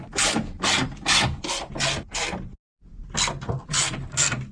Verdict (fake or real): real